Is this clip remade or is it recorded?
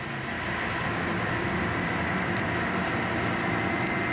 recorded